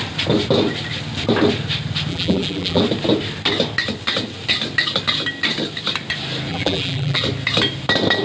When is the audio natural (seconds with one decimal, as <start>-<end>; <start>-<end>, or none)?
0.0-2.1; 2.8-6.5; 7.2-8.2